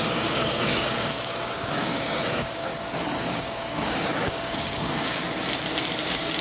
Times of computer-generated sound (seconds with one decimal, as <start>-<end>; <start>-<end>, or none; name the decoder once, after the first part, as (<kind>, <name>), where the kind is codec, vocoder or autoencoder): 0.0-2.7 (codec, DAC); 3.3-5.2; 6.0-6.4